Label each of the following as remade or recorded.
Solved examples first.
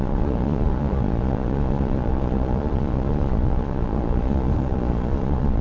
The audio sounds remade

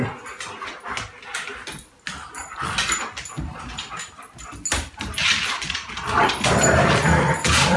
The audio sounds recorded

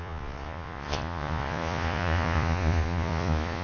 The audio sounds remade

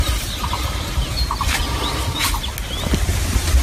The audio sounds recorded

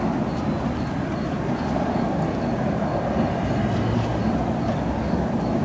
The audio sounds recorded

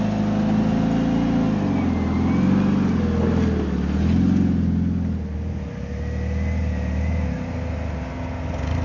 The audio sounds recorded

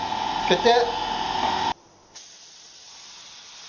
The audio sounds recorded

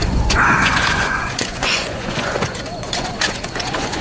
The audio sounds remade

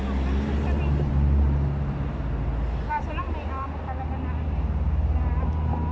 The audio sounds recorded